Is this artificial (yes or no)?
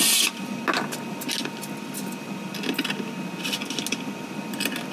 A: no